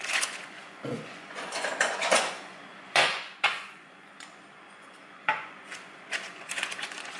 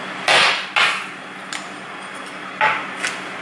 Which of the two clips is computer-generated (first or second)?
first